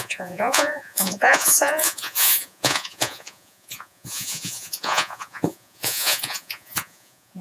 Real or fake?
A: fake